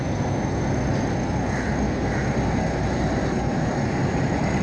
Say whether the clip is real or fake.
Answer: real